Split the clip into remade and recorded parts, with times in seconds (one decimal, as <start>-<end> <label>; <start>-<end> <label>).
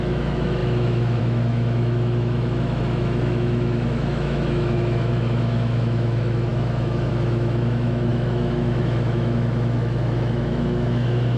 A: 0.0-11.4 remade